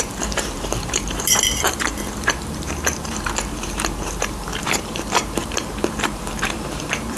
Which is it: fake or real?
fake